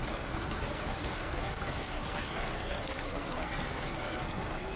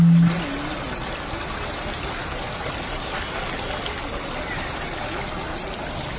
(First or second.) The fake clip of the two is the first